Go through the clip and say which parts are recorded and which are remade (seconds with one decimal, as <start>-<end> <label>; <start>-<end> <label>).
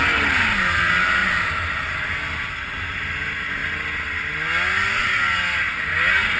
0.0-1.2 recorded; 1.2-1.9 remade; 1.9-6.4 recorded